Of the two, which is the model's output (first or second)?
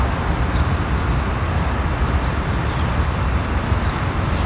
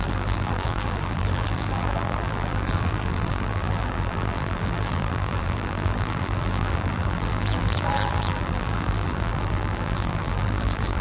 second